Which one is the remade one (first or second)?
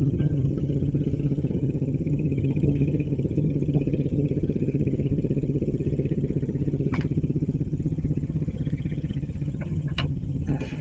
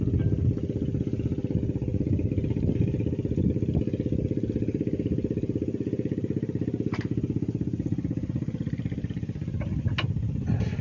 first